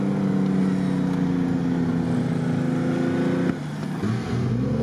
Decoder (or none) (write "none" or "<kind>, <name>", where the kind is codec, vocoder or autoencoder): none